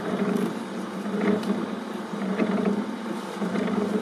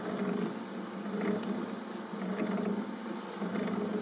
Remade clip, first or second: first